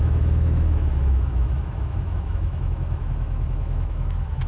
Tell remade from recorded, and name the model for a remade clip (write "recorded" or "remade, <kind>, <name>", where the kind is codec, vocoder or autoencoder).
remade, autoencoder, DAC-VAE